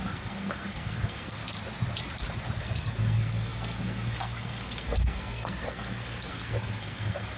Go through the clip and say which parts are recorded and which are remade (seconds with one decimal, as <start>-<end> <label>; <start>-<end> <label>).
0.0-1.4 remade; 1.4-2.6 recorded; 2.6-7.4 remade